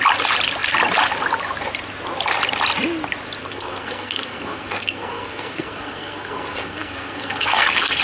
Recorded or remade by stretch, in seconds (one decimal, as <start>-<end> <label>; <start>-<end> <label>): 0.0-3.4 recorded; 3.4-8.0 remade